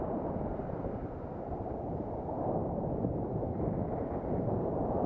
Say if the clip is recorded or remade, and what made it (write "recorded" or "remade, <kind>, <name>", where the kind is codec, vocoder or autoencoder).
remade, vocoder, BigVGAN v2